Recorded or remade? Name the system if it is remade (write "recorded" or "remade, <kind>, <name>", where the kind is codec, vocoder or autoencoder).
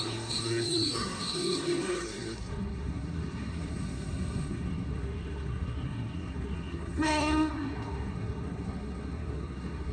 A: remade, codec, SNAC